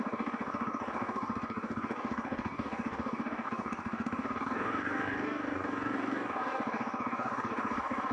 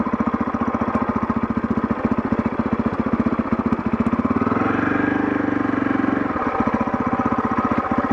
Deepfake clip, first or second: first